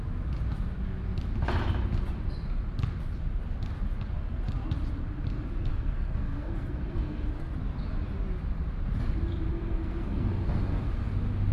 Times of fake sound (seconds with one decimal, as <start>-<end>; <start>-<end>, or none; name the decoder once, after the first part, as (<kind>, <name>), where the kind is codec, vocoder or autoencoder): 5.7-7.5 (codec, SNAC); 9.5-11.1